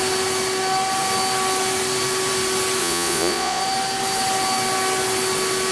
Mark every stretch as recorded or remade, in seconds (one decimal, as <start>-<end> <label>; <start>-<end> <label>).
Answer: 0.0-2.8 recorded; 2.8-3.6 remade; 3.6-5.7 recorded